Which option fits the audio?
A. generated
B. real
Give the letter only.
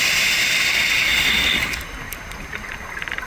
B